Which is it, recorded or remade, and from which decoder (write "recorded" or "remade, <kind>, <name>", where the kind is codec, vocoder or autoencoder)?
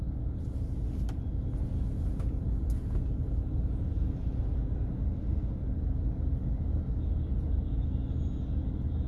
recorded